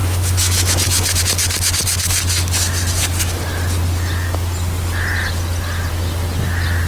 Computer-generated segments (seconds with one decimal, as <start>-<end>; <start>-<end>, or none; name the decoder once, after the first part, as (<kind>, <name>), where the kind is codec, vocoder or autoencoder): 0.0-1.2 (autoencoder, DAC-VAE)